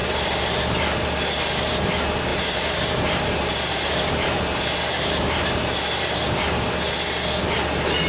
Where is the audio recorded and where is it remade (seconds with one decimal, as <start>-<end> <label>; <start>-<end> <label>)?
0.0-0.6 remade; 0.6-2.3 recorded; 2.3-6.2 remade; 6.2-8.1 recorded